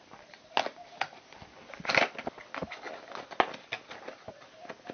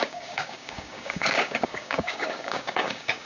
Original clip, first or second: first